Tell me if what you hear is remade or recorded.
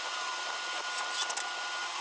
recorded